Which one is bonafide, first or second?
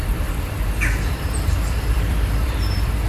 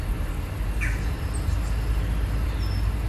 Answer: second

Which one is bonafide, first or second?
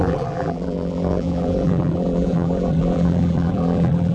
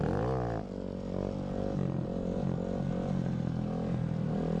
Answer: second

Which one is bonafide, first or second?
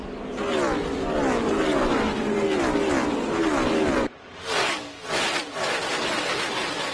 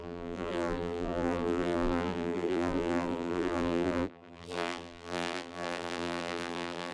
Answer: first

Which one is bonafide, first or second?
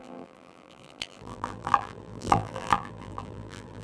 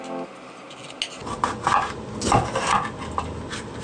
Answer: second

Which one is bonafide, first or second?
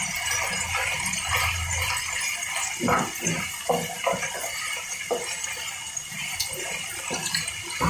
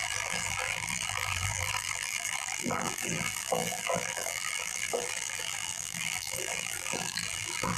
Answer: first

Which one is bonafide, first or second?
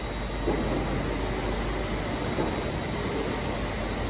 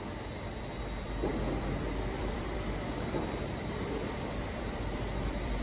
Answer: first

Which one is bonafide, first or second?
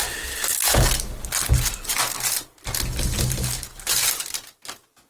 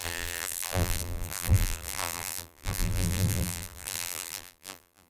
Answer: first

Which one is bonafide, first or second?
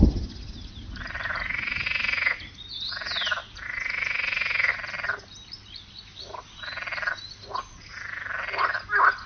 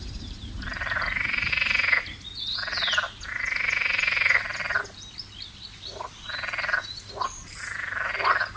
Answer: first